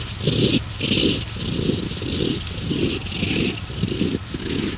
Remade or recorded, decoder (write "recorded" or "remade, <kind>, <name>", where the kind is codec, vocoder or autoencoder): recorded